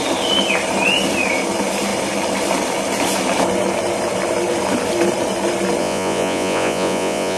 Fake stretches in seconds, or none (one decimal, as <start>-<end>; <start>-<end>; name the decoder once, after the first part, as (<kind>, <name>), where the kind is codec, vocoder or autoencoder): 5.8-7.4 (vocoder, Vocos)